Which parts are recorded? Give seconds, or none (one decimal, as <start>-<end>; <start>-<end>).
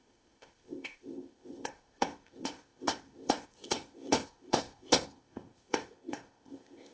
none